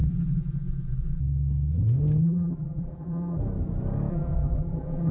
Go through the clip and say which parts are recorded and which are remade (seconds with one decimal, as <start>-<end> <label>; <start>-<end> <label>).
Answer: 0.0-1.2 remade; 1.2-2.2 recorded; 2.2-3.4 remade; 3.4-4.1 recorded; 4.1-5.1 remade